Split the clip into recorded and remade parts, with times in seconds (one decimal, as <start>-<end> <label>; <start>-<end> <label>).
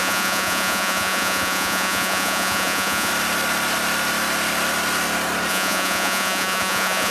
0.0-3.1 remade; 3.1-5.5 recorded; 5.5-7.1 remade